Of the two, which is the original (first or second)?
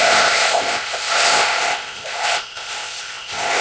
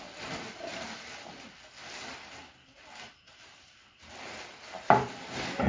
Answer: second